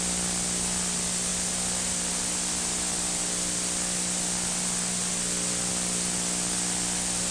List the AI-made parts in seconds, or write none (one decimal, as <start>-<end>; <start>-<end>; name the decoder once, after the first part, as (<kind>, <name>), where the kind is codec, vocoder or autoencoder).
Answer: none

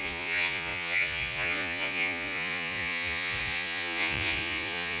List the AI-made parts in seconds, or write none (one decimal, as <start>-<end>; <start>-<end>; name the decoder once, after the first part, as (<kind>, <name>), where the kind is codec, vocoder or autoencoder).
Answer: 0.0-5.0 (vocoder, Vocos)

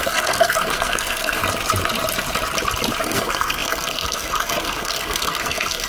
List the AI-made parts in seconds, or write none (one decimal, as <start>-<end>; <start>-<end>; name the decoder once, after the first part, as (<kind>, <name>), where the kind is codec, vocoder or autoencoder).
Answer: 0.0-1.4 (codec, SNAC); 3.0-5.9

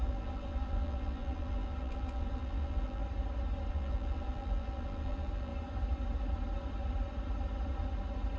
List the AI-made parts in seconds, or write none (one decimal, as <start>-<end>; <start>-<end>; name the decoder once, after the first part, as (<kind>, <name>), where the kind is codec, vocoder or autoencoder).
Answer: 0.0-3.0 (vocoder, BigVGAN v2); 3.7-5.5